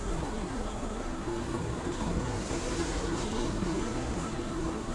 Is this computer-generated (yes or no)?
yes